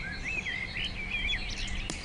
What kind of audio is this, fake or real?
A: real